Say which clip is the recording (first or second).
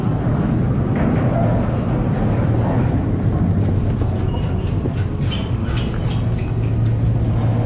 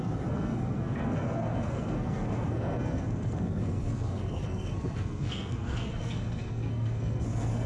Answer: first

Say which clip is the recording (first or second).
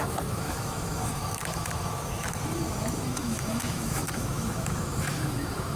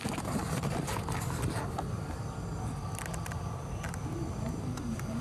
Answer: second